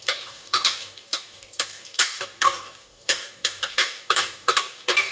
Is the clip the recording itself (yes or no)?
no